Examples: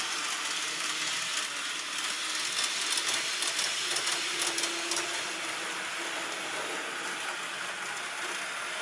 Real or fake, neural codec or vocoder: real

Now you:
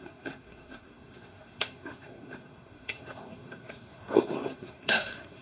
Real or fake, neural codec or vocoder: fake, codec, SNAC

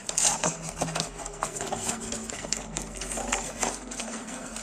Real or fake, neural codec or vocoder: fake, codec, SNAC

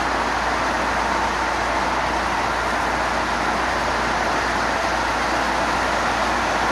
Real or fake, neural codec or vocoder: real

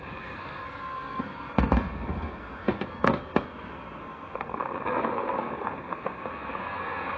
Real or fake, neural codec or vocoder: fake, codec, SNAC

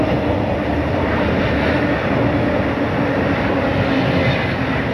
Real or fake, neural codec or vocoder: real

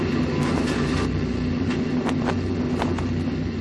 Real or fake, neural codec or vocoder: real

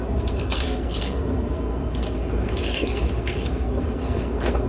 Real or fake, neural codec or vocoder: fake, codec, SNAC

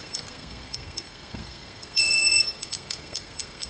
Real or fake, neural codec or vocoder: fake, codec, SNAC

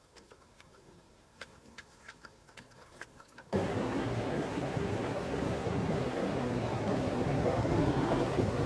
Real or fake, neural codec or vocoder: fake, codec, SNAC